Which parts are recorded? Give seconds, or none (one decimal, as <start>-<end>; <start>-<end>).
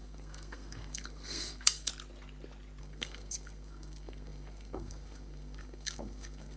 1.9-2.8